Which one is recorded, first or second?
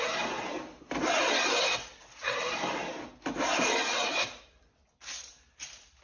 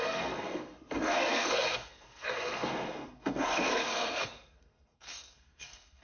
first